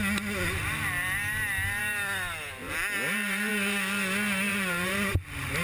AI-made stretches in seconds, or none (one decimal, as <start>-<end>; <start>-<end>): 4.5-5.6